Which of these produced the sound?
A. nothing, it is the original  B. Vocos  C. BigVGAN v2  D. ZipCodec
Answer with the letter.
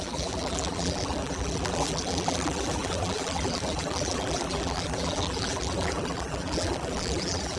C